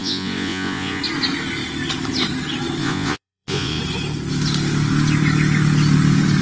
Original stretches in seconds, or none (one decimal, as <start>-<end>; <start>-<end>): 1.0-2.8; 3.8-6.4